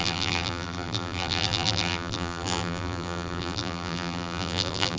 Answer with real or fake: fake